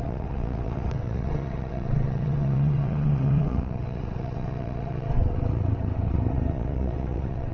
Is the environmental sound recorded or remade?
remade